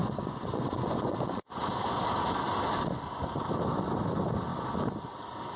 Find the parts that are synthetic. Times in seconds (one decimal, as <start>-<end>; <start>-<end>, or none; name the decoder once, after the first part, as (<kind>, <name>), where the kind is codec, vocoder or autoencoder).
0.0-1.6 (vocoder, Vocos)

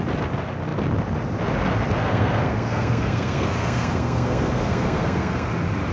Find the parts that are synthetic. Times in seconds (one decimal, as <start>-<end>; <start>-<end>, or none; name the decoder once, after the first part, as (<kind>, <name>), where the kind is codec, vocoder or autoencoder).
2.0-5.5 (codec, SNAC)

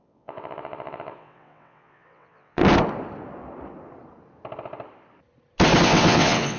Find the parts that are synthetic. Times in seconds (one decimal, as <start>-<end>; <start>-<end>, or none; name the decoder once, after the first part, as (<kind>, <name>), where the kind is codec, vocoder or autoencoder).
0.0-2.6 (vocoder, WaveNeXt); 5.8-6.6

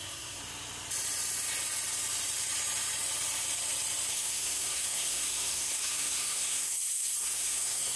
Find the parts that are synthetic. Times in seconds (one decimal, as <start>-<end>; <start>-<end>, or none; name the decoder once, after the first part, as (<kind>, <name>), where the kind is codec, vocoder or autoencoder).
0.0-0.4 (codec, SNAC); 4.1-8.0

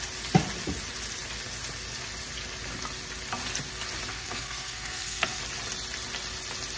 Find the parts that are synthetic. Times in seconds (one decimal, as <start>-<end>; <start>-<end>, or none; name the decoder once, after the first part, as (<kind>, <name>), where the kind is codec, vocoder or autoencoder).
4.1-5.4 (codec, SNAC)